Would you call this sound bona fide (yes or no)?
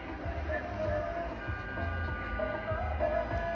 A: yes